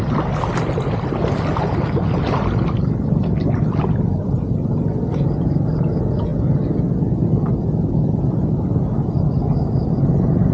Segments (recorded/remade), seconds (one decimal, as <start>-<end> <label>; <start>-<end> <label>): 0.0-10.5 recorded